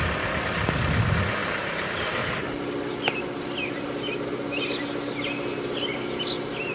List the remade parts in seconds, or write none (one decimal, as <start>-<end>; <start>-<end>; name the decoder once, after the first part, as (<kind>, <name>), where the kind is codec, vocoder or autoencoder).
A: none